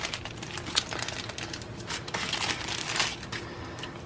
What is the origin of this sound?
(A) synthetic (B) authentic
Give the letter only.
B